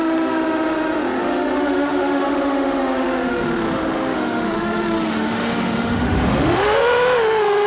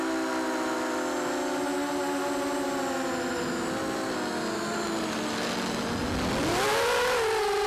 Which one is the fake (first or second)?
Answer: first